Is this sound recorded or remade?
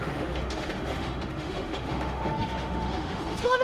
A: remade